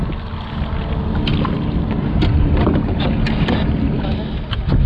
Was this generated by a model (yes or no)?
no